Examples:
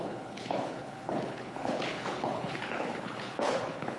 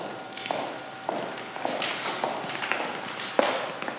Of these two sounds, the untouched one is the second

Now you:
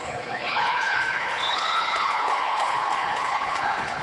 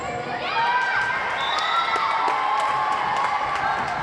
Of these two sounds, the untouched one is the second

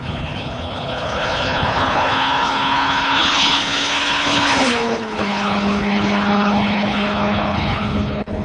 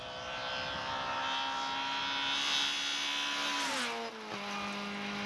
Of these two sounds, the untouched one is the second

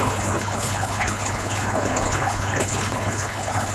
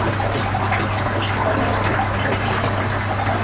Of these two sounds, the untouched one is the second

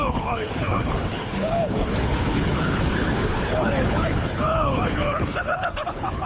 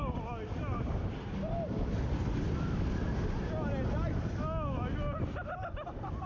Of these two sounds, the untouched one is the second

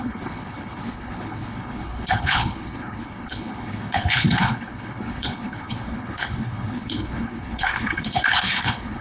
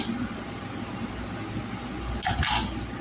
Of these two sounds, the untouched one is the second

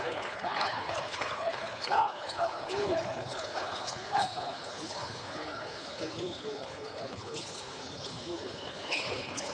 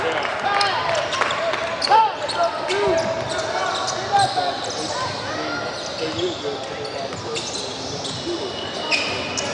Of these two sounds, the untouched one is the second